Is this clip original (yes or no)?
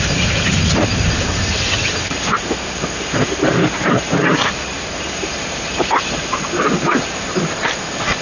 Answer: no